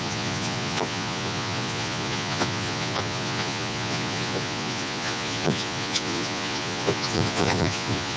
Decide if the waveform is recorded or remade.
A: remade